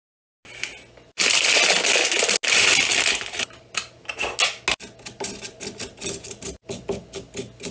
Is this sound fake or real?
real